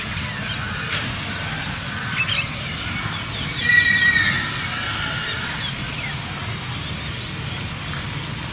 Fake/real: real